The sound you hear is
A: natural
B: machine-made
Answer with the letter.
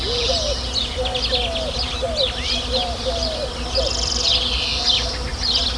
A